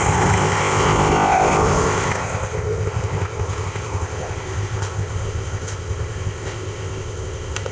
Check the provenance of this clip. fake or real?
fake